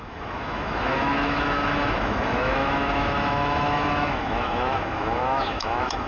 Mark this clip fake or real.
fake